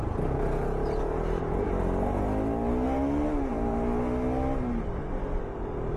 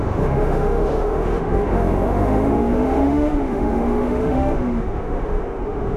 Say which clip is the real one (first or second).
first